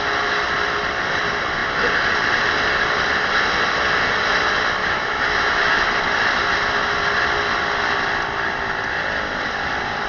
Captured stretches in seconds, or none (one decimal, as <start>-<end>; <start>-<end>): 0.0-4.8; 5.7-10.1